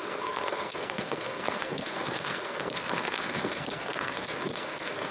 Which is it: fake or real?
fake